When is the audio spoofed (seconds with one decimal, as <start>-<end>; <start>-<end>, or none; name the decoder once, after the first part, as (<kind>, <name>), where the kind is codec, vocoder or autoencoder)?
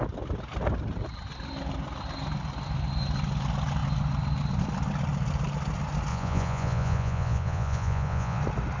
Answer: 6.1-8.4 (vocoder, Vocos)